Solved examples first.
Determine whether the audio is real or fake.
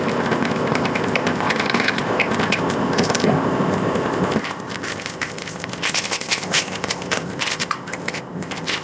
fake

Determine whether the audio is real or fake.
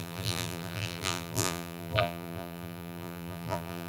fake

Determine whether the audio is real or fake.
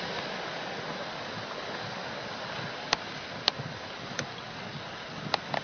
real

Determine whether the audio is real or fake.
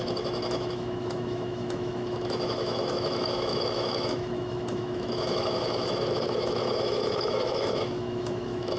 fake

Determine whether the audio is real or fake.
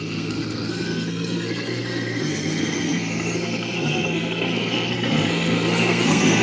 fake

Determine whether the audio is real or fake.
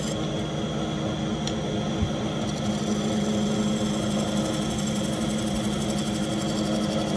real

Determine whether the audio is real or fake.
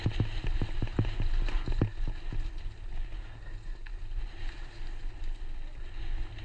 real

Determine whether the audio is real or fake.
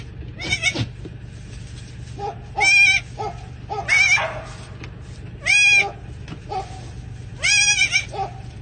real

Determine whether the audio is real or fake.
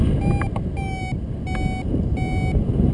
real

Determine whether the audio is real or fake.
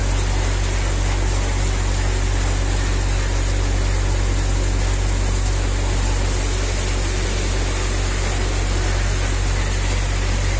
real